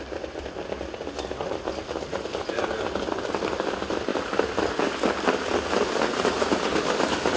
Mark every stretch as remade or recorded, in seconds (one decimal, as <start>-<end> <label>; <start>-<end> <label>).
0.0-7.4 recorded